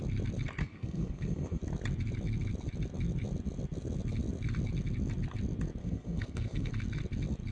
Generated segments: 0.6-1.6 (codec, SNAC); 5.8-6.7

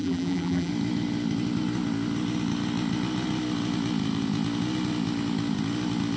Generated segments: 0.0-0.7 (vocoder, BigVGAN v2)

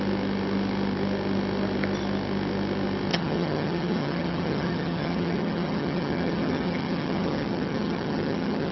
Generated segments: 3.1-8.7 (vocoder, HiFi-GAN)

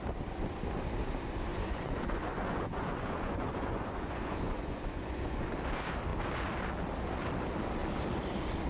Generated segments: 1.5-5.5 (vocoder, Vocos)

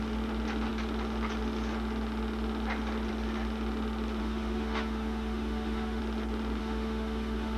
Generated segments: 4.2-6.0 (autoencoder, DAC-VAE); 6.6-7.6